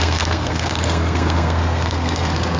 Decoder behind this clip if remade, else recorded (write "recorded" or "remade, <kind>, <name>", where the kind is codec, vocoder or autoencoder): remade, codec, SNAC